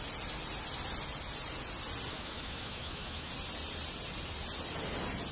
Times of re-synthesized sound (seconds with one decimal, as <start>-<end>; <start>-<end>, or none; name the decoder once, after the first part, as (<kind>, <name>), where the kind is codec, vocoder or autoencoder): 2.1-3.3 (autoencoder, DAC-VAE)